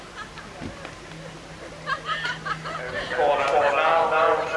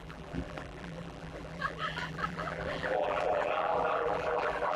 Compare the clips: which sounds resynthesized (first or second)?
second